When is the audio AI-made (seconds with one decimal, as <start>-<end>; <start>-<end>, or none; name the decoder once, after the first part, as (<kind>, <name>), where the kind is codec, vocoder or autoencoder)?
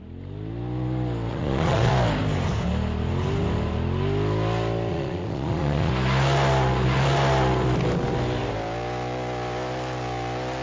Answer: 1.3-1.9 (vocoder, Vocos); 4.9-5.9